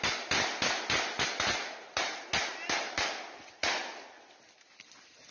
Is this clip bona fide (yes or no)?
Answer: yes